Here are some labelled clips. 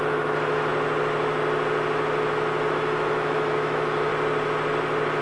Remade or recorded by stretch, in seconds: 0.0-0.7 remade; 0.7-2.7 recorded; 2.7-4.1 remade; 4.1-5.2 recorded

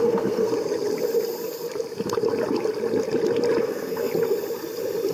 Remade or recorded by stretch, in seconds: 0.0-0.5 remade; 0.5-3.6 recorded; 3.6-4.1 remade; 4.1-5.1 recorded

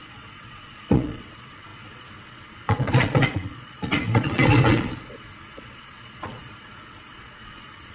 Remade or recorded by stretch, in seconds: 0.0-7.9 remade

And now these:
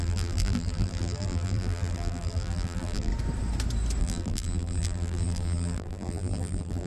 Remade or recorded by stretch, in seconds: 0.0-3.1 remade; 3.1-4.0 recorded; 4.0-6.9 remade

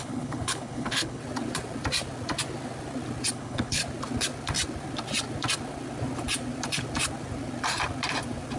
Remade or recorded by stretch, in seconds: 0.0-1.2 remade; 1.2-3.3 recorded; 3.3-3.8 remade; 3.8-8.6 recorded

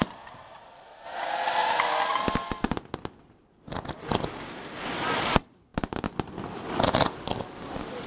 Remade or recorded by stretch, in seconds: 0.0-8.1 recorded

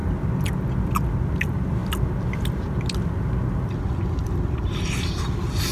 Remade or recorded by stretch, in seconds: 0.0-5.7 recorded